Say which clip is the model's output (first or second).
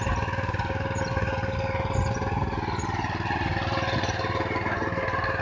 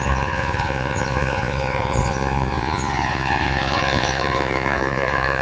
second